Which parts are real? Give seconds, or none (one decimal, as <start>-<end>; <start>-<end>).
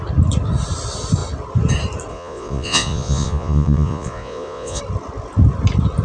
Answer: 0.0-2.1; 4.8-6.0